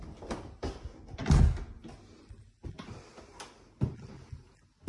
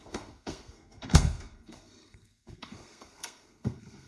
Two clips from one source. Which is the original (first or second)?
first